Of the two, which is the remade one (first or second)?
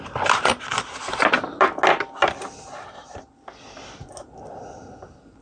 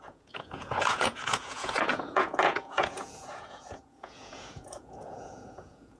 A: second